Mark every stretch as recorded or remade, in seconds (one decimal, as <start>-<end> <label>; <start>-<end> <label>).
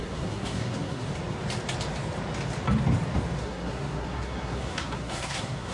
0.0-1.1 remade; 1.1-3.4 recorded; 3.4-5.7 remade